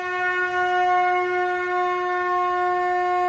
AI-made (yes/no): no